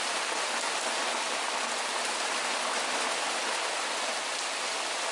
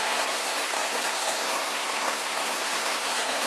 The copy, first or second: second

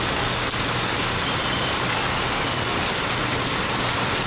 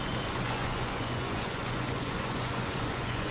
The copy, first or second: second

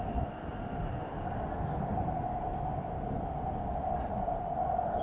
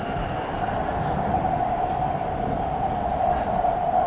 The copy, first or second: second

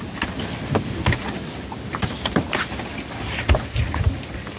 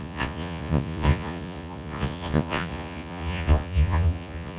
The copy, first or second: second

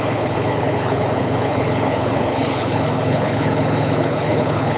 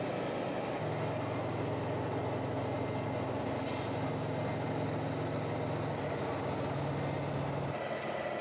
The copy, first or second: first